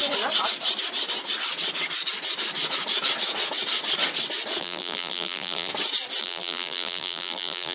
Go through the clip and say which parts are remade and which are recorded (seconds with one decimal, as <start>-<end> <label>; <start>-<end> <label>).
0.0-4.6 recorded; 4.6-5.7 remade; 5.7-6.2 recorded; 6.2-7.7 remade